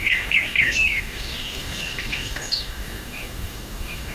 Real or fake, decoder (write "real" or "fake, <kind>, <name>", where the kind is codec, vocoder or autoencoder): fake, codec, DAC